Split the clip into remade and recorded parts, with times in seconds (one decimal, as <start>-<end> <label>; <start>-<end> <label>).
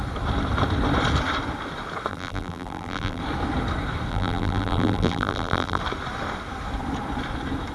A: 0.0-2.1 recorded; 2.1-3.2 remade; 3.2-4.1 recorded; 4.1-5.8 remade; 5.8-7.7 recorded